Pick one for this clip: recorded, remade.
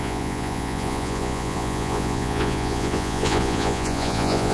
remade